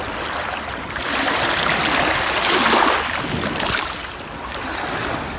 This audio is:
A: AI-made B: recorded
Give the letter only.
B